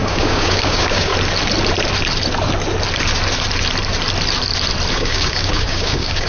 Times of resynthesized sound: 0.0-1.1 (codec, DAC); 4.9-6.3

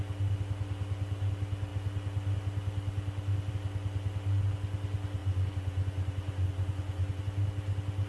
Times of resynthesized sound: 5.2-7.2 (vocoder, Vocos)